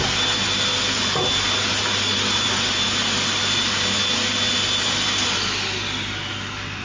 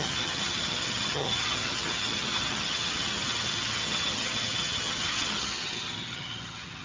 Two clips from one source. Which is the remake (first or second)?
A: second